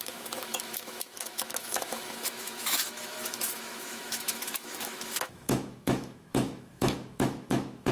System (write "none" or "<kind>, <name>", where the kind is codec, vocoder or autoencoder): autoencoder, DAC-VAE